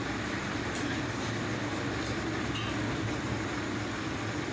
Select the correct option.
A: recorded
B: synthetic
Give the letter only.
A